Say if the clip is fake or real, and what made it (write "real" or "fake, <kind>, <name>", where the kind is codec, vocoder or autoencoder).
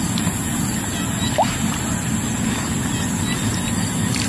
real